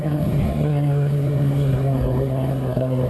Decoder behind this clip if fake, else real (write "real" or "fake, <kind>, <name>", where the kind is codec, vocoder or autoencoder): fake, codec, SNAC